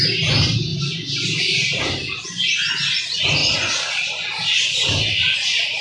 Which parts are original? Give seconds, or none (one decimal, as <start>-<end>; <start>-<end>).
0.0-5.8

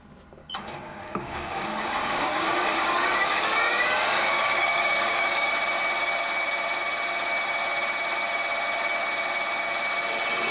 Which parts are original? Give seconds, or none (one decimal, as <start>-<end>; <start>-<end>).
0.0-0.4; 5.5-10.5

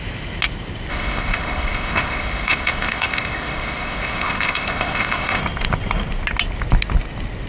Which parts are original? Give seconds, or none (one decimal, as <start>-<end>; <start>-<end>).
0.0-0.9; 5.4-7.5

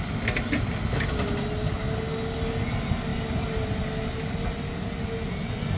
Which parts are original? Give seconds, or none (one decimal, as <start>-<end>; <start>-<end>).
0.0-5.8

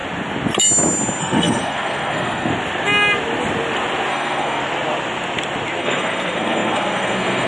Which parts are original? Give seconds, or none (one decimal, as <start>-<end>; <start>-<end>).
0.0-1.2; 2.5-4.1; 4.6-5.8

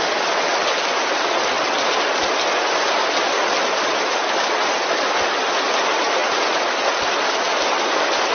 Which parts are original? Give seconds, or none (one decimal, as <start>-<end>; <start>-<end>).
0.0-8.3

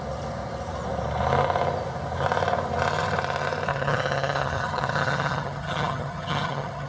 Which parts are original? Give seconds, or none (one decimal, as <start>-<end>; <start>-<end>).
0.0-3.7